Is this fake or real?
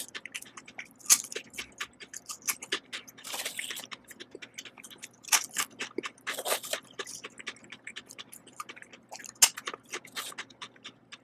real